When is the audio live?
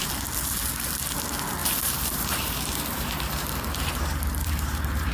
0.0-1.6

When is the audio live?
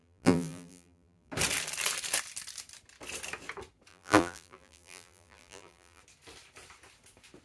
1.3-3.9; 6.0-7.4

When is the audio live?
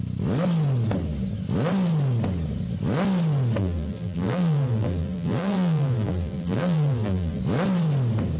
0.0-3.6; 7.4-8.4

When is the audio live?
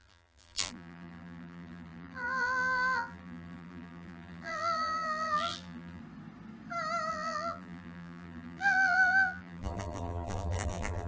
6.0-7.1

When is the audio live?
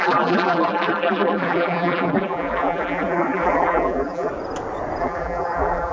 4.3-5.0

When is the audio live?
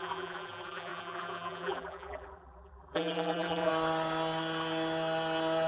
3.7-5.7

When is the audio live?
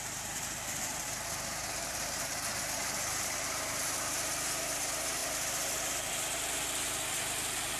none